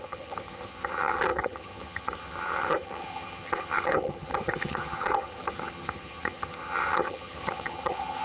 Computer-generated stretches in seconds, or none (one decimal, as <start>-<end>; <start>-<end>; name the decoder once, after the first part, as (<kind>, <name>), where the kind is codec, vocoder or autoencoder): 0.0-8.2 (vocoder, HiFi-GAN)